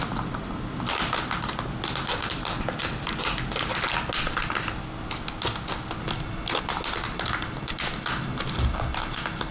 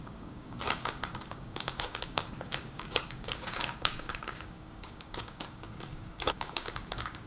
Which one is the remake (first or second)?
second